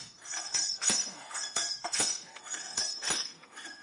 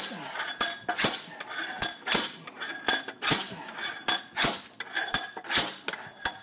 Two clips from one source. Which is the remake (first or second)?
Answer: first